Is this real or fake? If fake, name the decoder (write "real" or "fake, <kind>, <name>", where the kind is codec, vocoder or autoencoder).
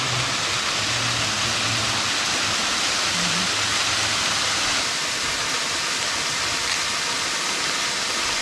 real